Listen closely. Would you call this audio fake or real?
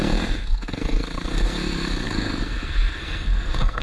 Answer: fake